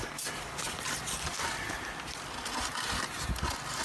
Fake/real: real